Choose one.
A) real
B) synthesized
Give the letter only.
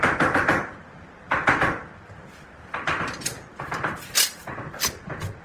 A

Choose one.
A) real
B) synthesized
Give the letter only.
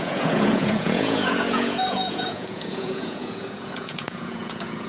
B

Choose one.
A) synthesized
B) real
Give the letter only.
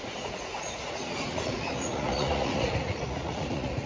A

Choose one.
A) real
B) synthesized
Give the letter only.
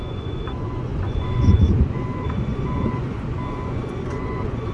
B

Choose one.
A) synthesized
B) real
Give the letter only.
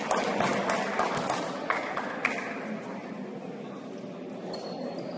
B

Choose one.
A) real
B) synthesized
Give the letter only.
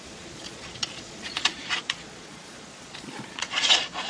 B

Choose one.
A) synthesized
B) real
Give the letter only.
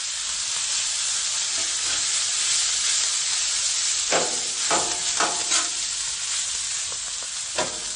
B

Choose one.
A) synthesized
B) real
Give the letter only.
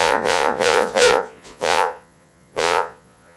A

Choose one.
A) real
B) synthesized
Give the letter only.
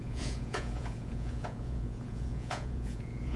B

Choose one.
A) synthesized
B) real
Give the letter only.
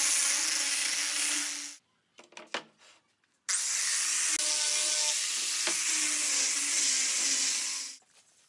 B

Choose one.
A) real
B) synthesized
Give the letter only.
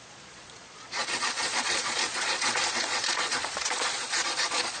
B